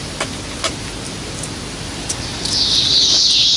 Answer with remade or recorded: recorded